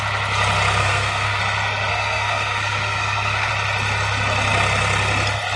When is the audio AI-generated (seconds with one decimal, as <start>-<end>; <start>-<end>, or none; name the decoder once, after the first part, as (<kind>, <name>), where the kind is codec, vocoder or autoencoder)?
0.8-1.4 (codec, SNAC); 1.9-3.5